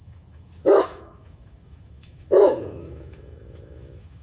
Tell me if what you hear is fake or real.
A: fake